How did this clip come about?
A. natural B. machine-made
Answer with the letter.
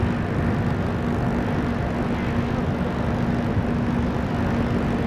A